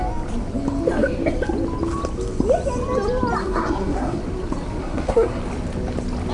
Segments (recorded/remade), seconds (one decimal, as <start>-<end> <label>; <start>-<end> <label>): 0.0-3.4 recorded; 3.4-4.2 remade; 4.2-4.8 recorded; 4.8-5.4 remade; 5.4-6.3 recorded